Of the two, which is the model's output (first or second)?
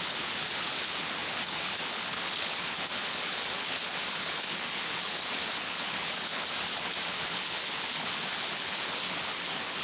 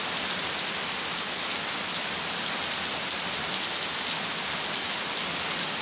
first